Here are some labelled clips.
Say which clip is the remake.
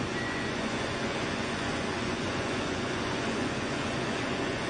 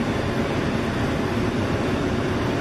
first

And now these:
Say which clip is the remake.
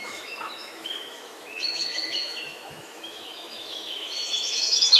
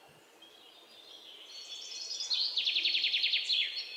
first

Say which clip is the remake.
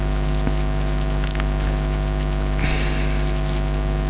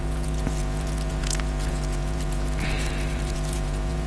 second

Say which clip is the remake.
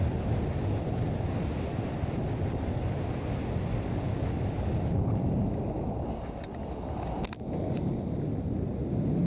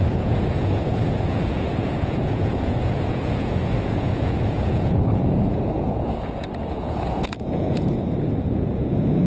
second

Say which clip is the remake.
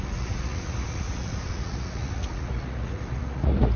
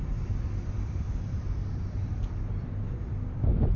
first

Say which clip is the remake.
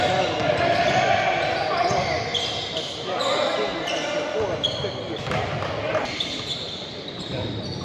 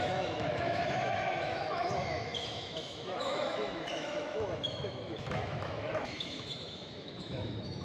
second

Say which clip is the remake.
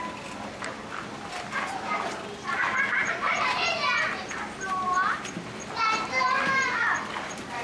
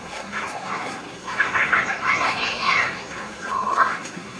second